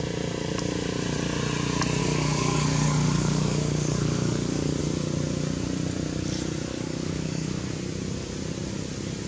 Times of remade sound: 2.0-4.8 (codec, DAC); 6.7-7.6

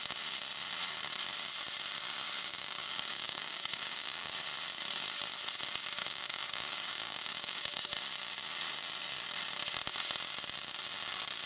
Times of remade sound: 2.5-4.3 (codec, DAC); 6.0-7.8

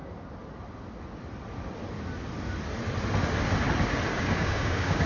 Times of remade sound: 4.1-5.1 (codec, DAC)

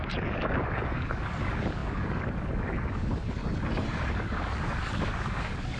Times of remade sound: 0.0-3.4 (codec, DAC); 4.1-5.8

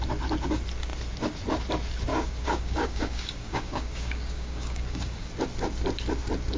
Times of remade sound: 2.1-5.3 (codec, DAC)

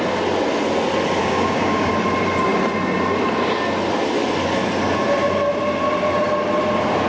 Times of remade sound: 1.2-1.9 (codec, DAC)